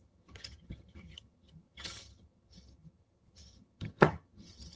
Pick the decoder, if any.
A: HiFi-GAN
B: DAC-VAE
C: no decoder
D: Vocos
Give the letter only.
A